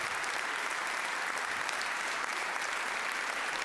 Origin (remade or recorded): remade